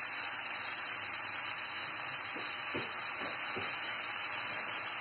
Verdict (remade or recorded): recorded